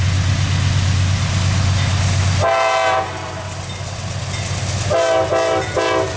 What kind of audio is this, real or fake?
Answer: real